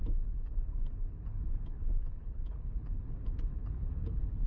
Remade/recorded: remade